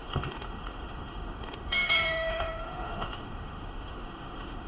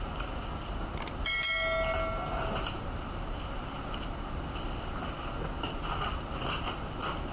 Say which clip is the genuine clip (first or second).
second